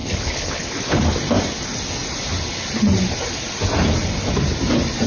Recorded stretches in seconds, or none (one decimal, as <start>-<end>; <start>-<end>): 1.0-5.1